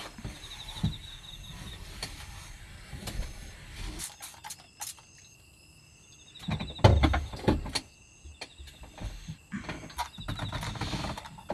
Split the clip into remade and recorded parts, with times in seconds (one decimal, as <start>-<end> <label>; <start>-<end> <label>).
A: 0.0-11.5 recorded